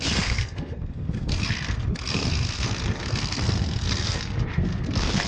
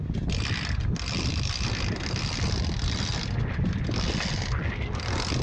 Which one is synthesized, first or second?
first